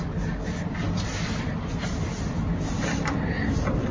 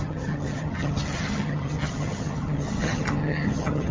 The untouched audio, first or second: first